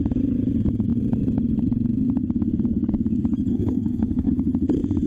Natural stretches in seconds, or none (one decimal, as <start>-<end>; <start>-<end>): 0.0-3.5; 4.3-5.1